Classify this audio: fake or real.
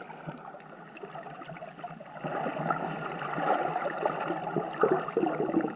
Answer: real